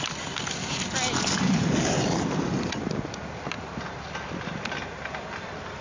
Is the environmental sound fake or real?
real